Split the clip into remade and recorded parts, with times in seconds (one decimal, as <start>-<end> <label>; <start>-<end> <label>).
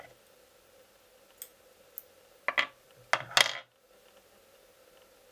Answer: 0.0-5.3 recorded